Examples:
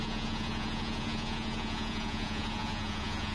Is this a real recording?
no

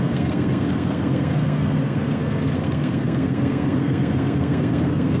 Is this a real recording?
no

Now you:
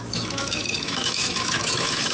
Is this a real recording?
no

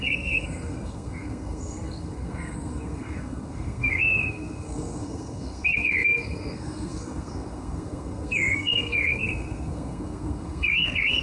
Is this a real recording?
no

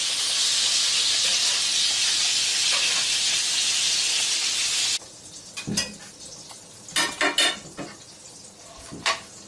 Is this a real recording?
yes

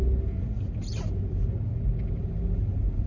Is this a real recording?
yes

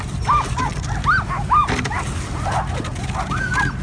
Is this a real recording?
yes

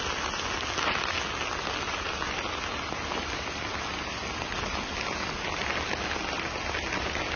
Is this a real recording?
yes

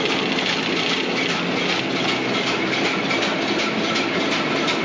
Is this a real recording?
yes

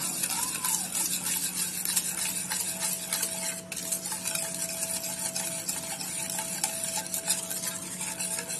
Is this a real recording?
yes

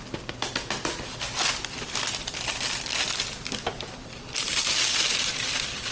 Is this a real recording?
yes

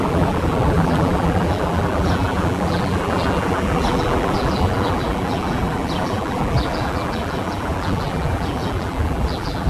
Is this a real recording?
no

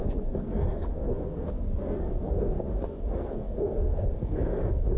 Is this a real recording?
no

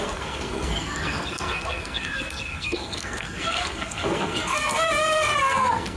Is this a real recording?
no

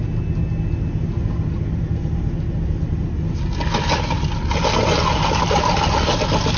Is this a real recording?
yes